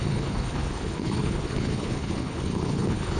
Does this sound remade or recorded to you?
remade